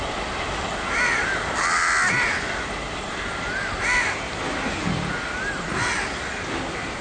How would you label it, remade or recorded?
recorded